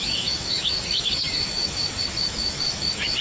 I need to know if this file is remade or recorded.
remade